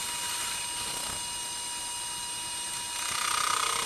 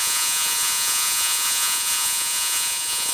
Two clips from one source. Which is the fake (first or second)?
second